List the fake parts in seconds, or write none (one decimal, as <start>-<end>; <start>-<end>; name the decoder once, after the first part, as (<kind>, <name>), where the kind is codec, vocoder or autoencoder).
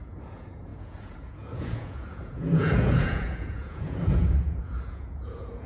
0.0-5.7 (vocoder, Vocos)